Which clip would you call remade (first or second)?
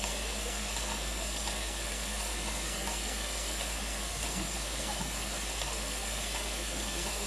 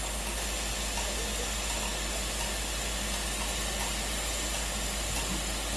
first